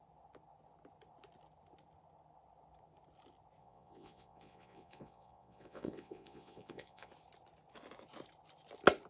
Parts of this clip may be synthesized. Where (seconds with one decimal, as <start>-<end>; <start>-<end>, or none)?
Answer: 3.6-7.1